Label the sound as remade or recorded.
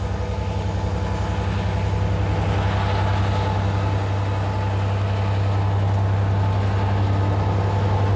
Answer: recorded